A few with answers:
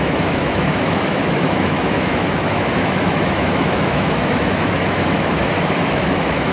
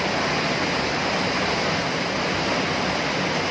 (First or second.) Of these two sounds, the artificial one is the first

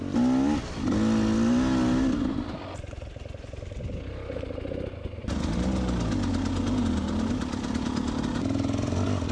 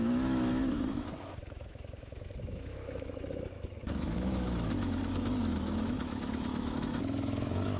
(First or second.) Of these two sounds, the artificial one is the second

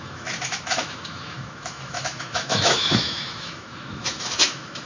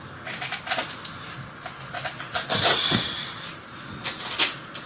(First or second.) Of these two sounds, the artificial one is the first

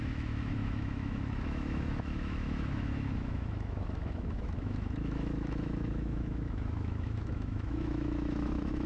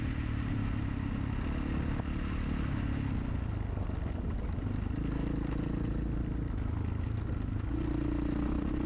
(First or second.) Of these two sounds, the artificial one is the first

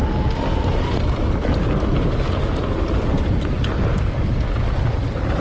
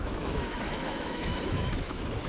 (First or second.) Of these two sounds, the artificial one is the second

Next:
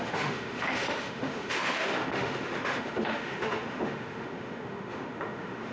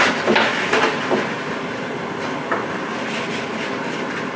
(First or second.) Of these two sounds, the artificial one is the first